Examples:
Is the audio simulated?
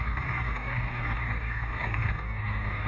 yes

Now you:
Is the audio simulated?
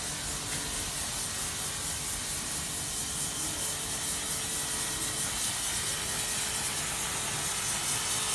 no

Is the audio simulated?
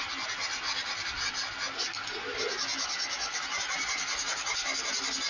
no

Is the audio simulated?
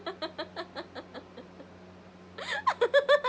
no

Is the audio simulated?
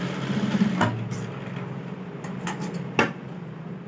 no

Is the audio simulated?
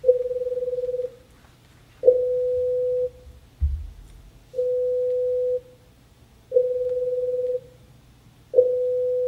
no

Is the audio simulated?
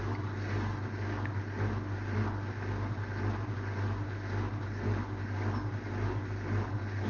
no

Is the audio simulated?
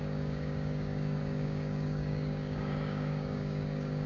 yes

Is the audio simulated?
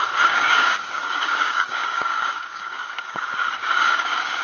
yes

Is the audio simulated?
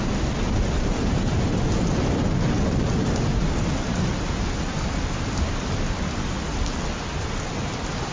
no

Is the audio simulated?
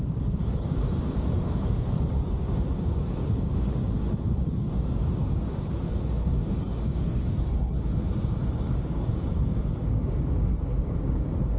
yes